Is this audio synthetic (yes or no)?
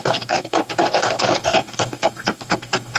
yes